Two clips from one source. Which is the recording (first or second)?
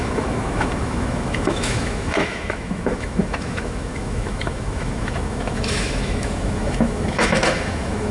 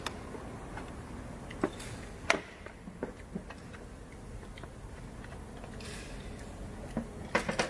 second